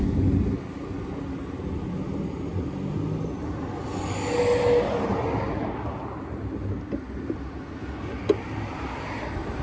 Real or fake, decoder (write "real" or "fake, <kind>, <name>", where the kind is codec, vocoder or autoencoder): real